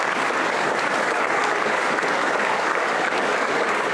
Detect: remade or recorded remade